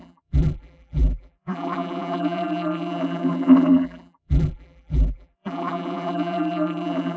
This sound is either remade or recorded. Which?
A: remade